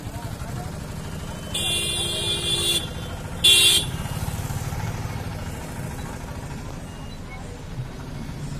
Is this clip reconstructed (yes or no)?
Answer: no